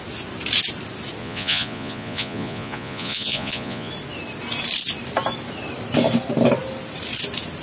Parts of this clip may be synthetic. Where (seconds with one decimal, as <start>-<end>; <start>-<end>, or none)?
1.2-3.9

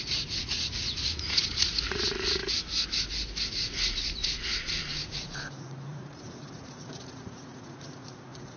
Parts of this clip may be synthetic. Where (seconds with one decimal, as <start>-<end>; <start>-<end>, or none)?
0.0-2.4; 3.5-8.6